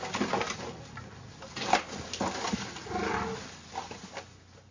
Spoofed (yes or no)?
no